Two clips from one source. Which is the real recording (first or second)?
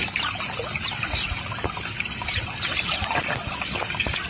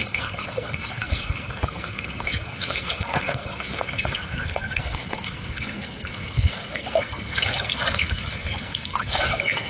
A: first